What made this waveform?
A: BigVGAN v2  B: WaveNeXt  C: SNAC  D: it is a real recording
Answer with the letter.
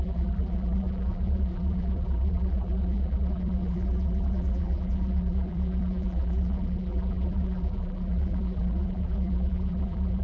A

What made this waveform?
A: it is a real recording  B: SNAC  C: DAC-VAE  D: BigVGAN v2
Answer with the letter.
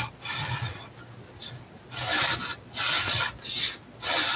A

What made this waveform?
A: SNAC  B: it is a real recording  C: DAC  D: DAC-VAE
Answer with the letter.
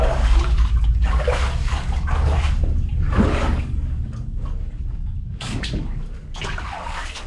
C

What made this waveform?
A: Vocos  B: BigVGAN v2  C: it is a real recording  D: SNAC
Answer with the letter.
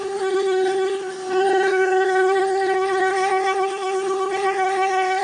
D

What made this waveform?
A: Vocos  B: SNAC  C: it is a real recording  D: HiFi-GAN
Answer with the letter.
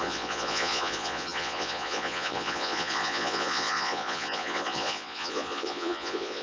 A